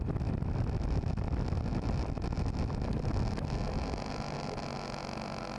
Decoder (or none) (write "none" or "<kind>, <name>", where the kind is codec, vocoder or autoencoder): none